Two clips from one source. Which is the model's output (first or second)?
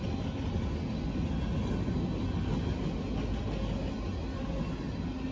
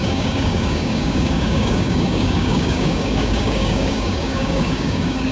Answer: second